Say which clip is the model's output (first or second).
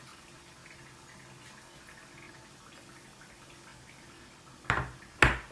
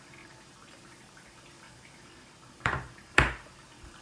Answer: second